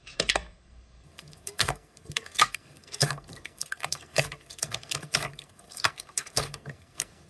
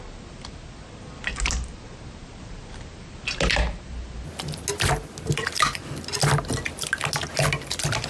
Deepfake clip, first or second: first